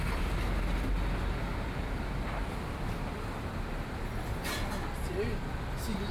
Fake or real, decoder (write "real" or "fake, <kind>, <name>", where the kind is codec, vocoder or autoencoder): real